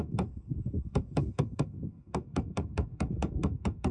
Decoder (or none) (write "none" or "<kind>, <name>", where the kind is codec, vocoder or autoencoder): codec, SNAC